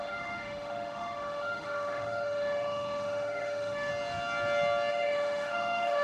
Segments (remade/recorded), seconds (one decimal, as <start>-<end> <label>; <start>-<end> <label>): 0.0-3.9 remade; 3.9-4.9 recorded; 4.9-6.0 remade